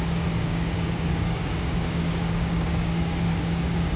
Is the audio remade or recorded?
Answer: remade